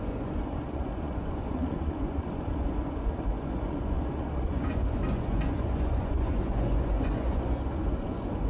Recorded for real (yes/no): no